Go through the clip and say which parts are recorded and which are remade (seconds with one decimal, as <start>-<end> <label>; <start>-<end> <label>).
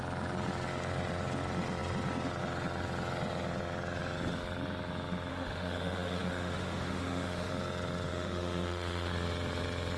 0.0-5.3 recorded; 5.3-7.5 remade; 7.5-8.1 recorded; 8.1-9.1 remade; 9.1-10.0 recorded